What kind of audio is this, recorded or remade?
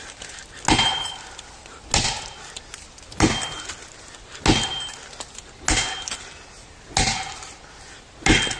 recorded